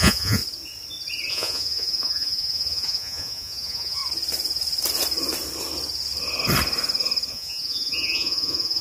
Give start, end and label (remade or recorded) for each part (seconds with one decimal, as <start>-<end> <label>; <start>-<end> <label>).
0.0-0.4 remade; 0.4-1.3 recorded; 1.3-4.0 remade; 4.0-7.3 recorded; 7.3-8.8 remade